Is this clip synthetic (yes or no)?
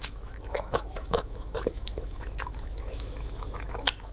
yes